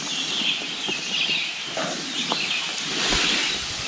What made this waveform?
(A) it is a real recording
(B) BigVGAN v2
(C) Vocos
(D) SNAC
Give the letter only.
A